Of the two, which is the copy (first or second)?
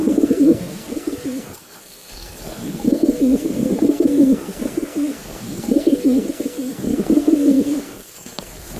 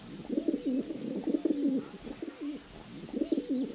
first